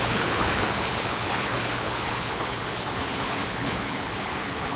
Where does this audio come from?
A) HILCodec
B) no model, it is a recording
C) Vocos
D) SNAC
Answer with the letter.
A